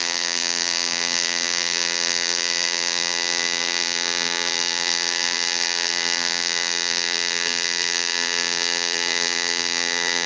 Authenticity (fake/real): fake